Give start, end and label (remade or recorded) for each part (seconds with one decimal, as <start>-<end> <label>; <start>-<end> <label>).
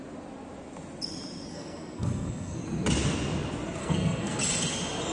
0.0-1.5 recorded; 1.5-2.6 remade; 2.6-3.8 recorded; 3.8-4.4 remade; 4.4-5.1 recorded